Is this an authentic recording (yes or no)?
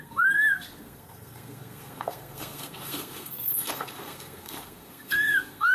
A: no